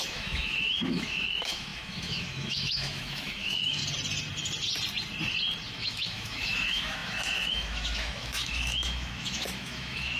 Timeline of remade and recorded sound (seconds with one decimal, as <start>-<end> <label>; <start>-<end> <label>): 0.0-3.8 remade; 3.8-5.7 recorded; 5.7-10.2 remade